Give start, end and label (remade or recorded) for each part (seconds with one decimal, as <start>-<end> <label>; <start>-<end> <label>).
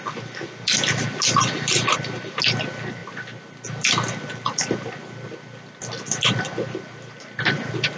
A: 0.0-8.0 recorded